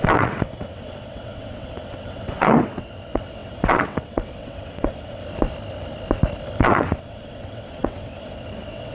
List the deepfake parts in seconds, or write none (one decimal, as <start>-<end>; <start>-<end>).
0.0-5.2; 6.6-8.9